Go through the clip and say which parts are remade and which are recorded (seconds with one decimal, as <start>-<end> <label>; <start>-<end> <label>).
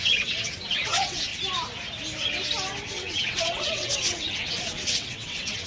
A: 0.0-1.3 remade; 1.3-2.9 recorded; 2.9-5.7 remade